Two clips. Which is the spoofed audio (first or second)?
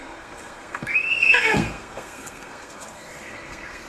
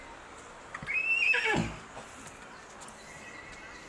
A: first